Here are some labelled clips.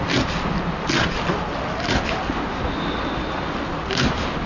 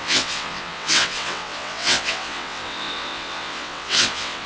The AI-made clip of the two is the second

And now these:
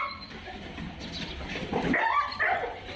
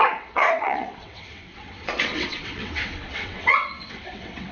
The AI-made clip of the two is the second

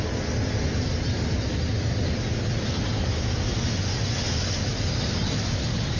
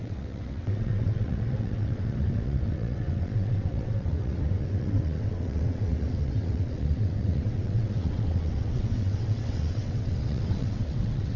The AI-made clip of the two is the second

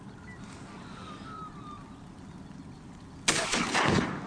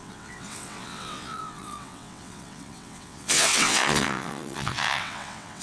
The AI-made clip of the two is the second